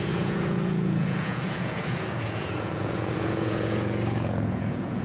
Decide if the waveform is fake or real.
fake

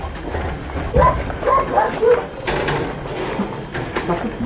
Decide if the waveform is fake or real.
real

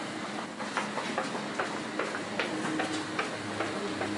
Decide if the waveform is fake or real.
real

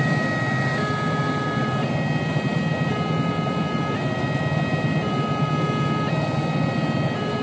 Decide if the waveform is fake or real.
real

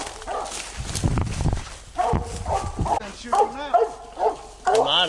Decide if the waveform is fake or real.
real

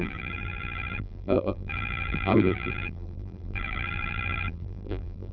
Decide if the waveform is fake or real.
fake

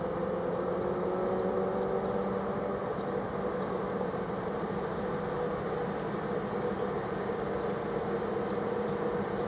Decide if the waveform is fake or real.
real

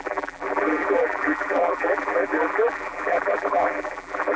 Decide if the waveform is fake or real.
fake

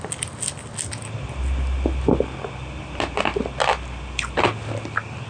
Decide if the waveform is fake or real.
real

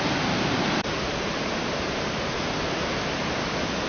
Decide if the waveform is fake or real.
fake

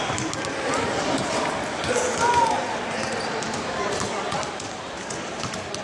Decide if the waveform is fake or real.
real